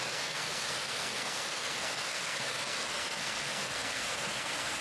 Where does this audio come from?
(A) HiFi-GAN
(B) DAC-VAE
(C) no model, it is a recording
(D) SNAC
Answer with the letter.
D